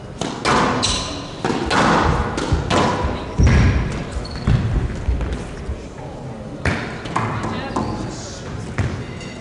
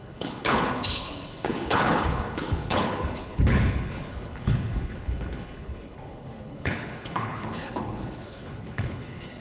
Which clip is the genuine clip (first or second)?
first